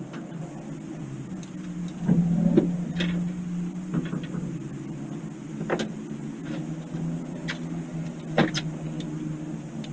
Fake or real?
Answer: real